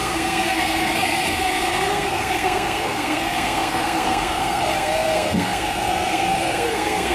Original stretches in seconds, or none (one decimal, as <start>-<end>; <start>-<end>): none